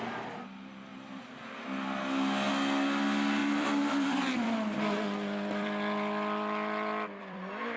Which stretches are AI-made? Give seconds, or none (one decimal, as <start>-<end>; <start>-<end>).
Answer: 3.4-7.8